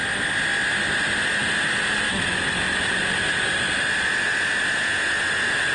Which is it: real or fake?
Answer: real